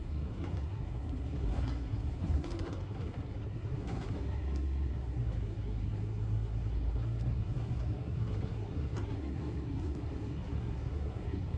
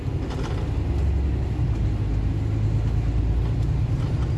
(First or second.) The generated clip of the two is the first